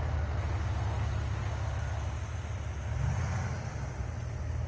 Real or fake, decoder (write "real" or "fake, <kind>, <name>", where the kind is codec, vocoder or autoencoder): real